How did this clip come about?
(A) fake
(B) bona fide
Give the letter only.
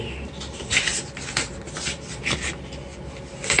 B